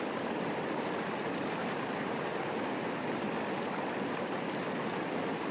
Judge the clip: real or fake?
real